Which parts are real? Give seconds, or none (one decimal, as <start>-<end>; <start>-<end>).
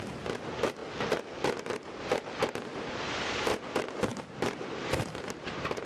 0.0-2.7; 3.6-4.1